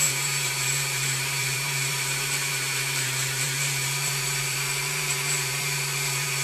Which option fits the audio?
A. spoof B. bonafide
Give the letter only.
A